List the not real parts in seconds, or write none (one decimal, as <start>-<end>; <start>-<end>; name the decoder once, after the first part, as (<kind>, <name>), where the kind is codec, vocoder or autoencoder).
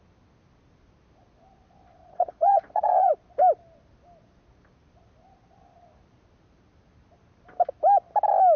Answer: 2.0-3.1 (vocoder, Vocos)